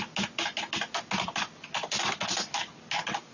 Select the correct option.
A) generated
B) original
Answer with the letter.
B